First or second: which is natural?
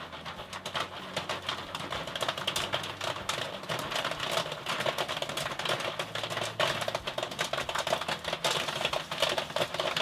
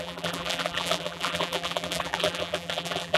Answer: first